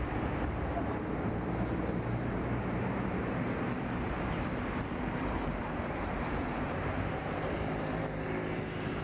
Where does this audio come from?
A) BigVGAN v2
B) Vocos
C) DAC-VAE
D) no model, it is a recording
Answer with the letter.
A